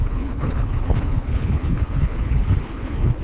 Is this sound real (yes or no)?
no